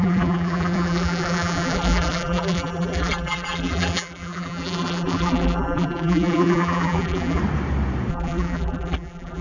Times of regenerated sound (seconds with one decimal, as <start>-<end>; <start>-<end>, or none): 0.0-7.4; 8.1-9.4